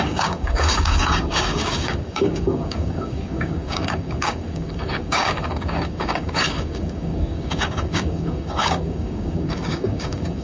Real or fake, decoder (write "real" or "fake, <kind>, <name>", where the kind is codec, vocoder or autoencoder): fake, codec, DAC